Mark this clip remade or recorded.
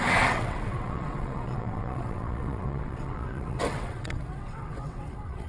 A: remade